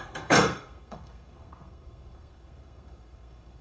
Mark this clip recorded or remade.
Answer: remade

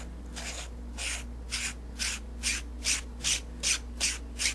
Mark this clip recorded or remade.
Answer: recorded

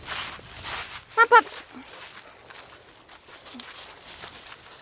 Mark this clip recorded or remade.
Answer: recorded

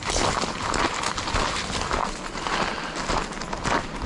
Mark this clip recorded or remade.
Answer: recorded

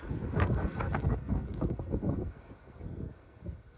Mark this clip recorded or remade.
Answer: remade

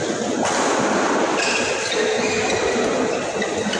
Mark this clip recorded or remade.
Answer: recorded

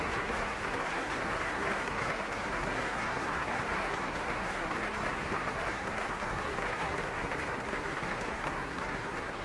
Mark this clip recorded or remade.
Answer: remade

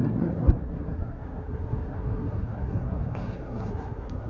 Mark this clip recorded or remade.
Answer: remade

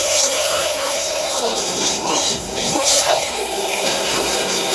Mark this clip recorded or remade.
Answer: remade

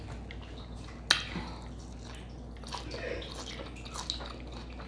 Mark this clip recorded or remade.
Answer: recorded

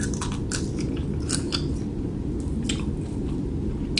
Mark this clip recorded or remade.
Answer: recorded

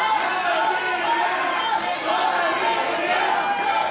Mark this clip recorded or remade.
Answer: recorded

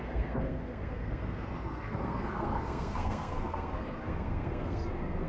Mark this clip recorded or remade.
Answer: remade